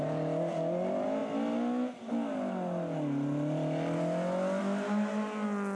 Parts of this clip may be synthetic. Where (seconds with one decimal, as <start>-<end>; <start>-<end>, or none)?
none